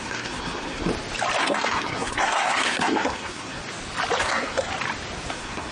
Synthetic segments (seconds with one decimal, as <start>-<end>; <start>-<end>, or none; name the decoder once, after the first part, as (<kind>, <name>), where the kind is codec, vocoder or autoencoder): 0.0-0.9 (codec, SNAC); 1.4-3.6; 4.2-4.7; 5.3-5.7